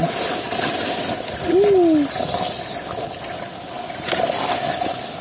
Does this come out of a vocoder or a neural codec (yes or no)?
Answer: no